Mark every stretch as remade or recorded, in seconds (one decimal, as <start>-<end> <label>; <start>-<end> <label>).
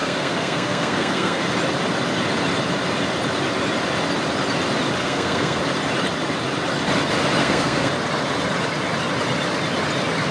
0.0-1.4 remade; 1.4-5.0 recorded; 5.0-5.6 remade; 5.6-7.4 recorded; 7.4-7.9 remade; 7.9-10.3 recorded